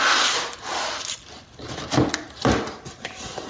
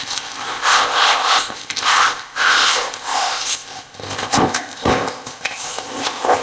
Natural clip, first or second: first